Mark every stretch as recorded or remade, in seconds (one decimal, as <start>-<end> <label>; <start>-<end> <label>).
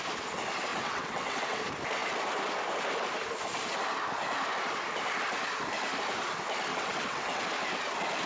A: 0.0-0.7 recorded; 0.7-1.6 remade; 1.6-6.7 recorded; 6.7-7.4 remade; 7.4-8.3 recorded